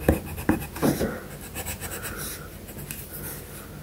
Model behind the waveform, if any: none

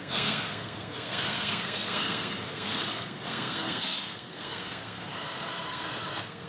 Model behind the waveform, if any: codec, SNAC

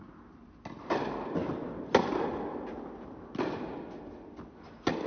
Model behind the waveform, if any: none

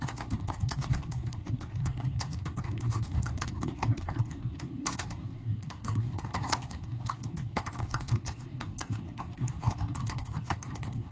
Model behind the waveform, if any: codec, SNAC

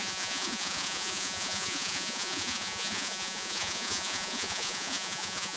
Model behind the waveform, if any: vocoder, Vocos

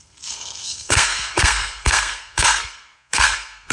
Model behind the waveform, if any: codec, SNAC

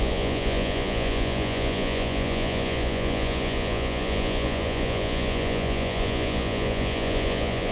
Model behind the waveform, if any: vocoder, Vocos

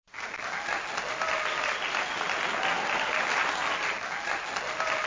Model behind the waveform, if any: none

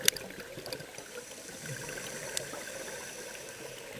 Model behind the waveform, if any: none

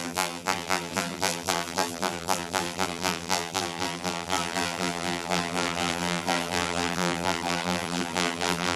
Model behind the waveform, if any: vocoder, BigVGAN v2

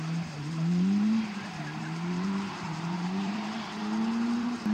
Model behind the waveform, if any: vocoder, BigVGAN v2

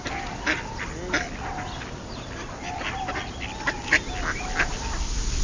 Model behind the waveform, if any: none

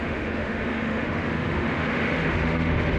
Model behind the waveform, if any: autoencoder, DAC-VAE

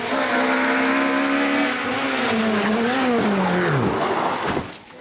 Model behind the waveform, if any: none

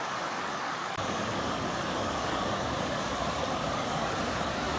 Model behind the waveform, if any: codec, DAC